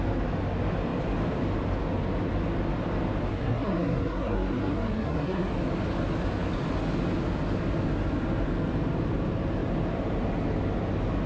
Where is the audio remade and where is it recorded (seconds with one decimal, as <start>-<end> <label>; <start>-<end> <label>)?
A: 0.0-3.3 recorded; 3.3-5.5 remade; 5.5-11.3 recorded